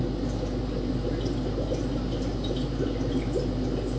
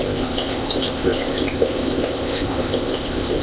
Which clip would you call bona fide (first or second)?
first